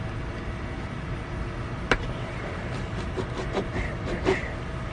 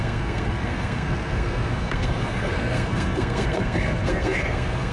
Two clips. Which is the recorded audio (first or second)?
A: first